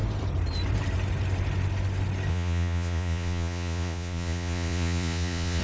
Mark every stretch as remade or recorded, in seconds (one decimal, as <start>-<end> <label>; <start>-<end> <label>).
0.0-2.3 recorded; 2.3-5.6 remade